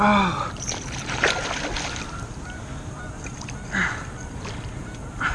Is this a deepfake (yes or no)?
no